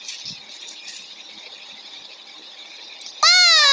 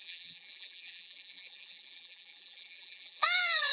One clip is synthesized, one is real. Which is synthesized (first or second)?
second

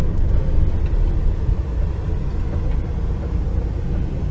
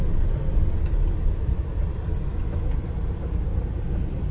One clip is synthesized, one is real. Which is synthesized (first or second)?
second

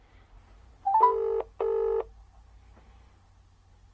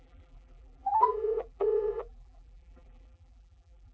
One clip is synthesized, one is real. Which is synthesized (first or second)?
second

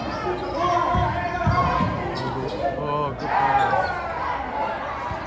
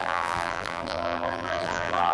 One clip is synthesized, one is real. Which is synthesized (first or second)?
second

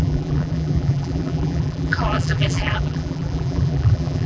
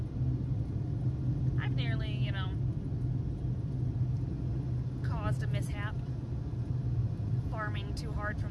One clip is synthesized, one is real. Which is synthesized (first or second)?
first